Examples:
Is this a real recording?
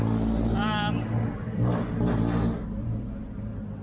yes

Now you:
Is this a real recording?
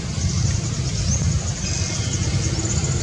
yes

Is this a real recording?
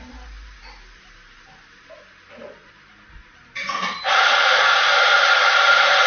no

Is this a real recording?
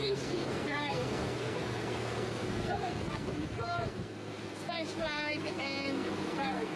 no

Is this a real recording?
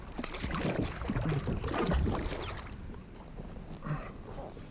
yes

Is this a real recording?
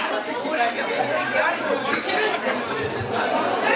yes